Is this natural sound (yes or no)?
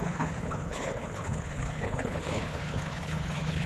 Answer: no